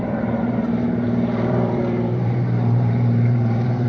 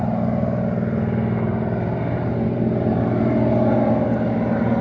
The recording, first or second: second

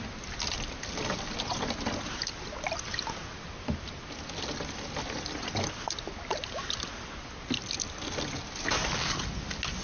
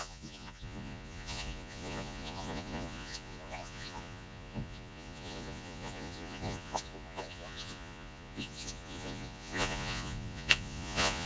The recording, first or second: first